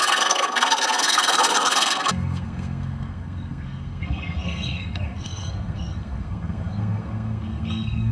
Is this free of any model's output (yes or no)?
no